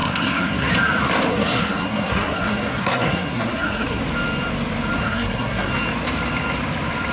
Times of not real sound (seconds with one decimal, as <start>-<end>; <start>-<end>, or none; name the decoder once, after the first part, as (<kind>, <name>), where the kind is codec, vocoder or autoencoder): 0.0-0.7 (codec, SNAC); 1.3-4.0; 5.0-5.7